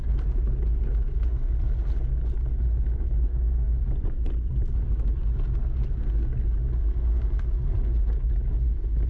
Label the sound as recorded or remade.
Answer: recorded